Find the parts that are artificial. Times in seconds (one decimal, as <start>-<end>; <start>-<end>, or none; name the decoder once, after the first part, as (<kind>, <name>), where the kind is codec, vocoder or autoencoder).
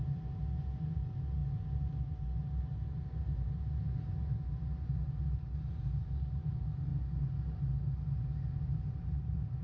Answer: 0.0-6.9 (vocoder, BigVGAN v2); 8.6-9.6